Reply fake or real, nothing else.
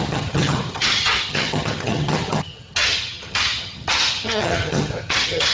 fake